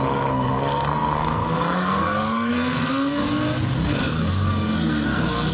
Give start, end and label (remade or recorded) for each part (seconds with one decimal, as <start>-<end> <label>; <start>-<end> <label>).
0.0-3.2 remade; 3.2-3.8 recorded; 3.8-5.5 remade